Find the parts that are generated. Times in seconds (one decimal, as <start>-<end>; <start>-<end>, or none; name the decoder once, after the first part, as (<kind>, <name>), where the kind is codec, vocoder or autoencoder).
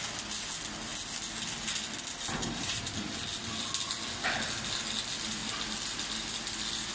none